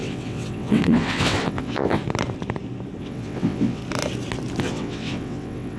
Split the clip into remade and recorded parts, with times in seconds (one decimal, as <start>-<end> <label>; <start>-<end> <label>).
0.0-2.0 remade; 2.0-3.0 recorded; 3.0-3.8 remade; 3.8-4.6 recorded; 4.6-5.8 remade